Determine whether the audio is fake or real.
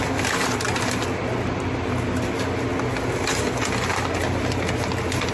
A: real